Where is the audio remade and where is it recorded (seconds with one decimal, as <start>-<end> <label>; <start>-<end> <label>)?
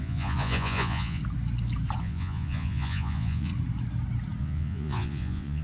0.0-1.2 remade; 1.2-2.0 recorded; 2.0-3.5 remade; 3.5-4.4 recorded; 4.4-5.6 remade